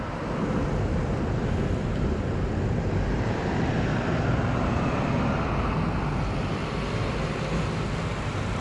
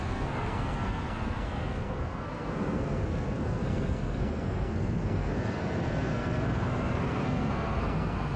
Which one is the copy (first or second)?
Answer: second